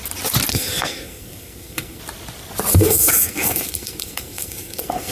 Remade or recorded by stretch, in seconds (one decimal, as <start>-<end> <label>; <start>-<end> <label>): 0.0-0.5 recorded; 0.5-2.0 remade; 2.0-2.7 recorded; 2.7-5.1 remade